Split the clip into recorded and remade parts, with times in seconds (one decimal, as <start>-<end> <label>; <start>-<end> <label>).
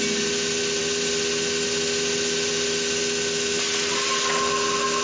0.0-5.0 recorded